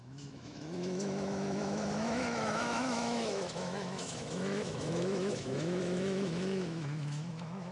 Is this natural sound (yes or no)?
no